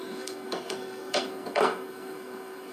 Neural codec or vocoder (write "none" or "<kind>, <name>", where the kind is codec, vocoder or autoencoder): codec, SNAC